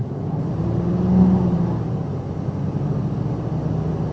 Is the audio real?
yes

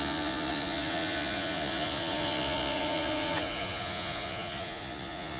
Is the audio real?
no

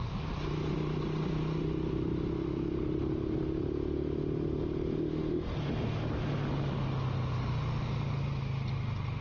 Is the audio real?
yes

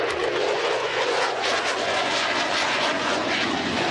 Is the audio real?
no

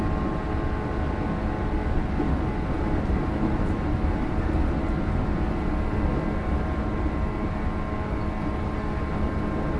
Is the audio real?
yes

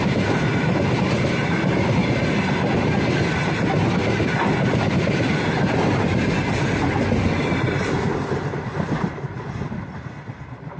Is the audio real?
yes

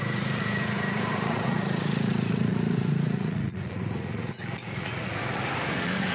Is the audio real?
no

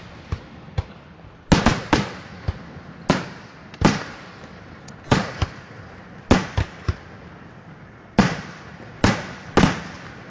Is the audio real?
yes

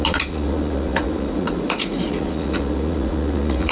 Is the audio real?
no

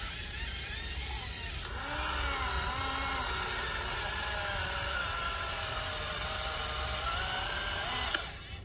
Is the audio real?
yes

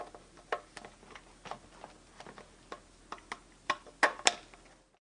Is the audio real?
yes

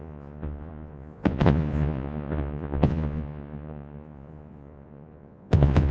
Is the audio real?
no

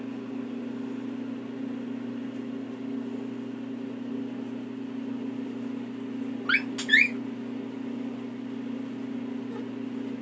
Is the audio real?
yes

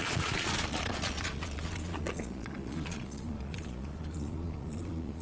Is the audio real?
no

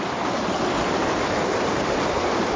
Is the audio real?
yes